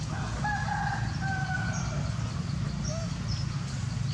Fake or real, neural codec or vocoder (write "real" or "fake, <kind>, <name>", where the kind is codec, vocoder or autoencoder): real